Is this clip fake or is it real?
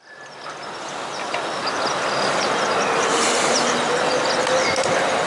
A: real